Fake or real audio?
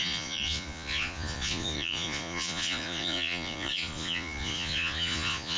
fake